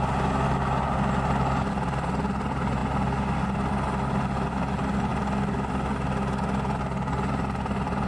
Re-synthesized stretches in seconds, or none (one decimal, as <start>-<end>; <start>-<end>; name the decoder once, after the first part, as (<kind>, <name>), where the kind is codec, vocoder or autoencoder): none